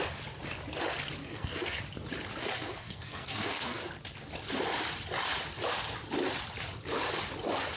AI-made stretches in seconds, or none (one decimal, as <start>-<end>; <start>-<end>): 1.2-1.8; 2.4-3.9